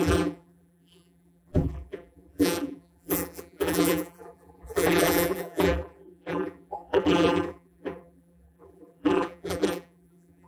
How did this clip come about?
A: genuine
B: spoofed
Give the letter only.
B